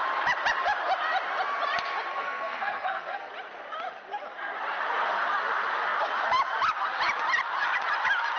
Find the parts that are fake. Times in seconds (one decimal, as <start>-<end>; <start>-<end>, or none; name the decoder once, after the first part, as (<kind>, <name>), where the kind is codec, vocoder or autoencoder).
2.1-3.3 (codec, SNAC)